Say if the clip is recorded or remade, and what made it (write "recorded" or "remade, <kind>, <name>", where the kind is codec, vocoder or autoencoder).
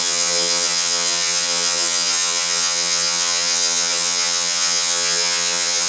remade, vocoder, HiFi-GAN